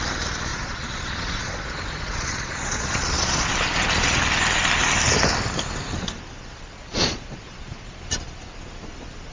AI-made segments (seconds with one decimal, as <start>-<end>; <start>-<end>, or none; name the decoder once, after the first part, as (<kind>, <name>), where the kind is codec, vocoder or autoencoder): 0.5-3.5 (vocoder, Vocos); 6.5-7.9